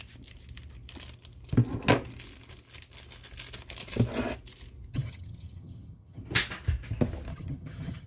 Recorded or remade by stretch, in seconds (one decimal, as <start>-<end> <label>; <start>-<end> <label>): 0.0-4.9 recorded; 4.9-6.2 remade; 6.2-7.3 recorded; 7.3-8.1 remade